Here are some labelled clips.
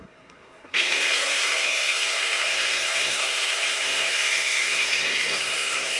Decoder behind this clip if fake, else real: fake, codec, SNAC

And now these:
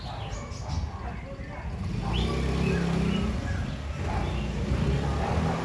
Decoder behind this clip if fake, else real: real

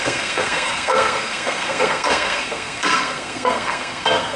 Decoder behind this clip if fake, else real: fake, codec, SNAC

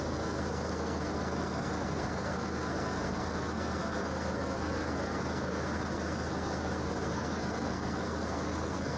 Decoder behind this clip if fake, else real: fake, codec, SNAC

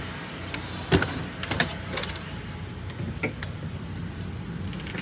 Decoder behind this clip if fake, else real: real